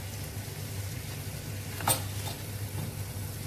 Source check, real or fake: real